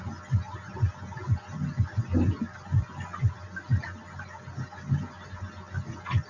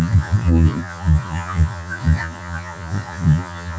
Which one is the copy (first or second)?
second